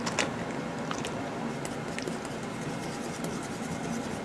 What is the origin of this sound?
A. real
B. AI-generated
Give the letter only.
A